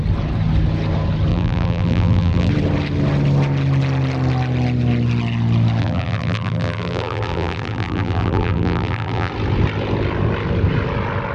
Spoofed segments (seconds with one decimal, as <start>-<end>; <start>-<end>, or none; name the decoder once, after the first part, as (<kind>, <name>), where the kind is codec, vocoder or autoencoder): 1.3-2.5 (vocoder, BigVGAN v2); 5.8-9.3